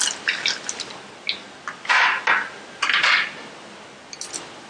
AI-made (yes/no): no